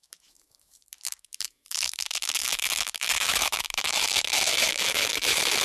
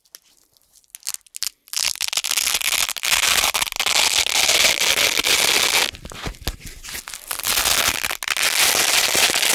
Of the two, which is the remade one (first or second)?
first